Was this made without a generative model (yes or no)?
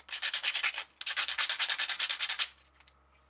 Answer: yes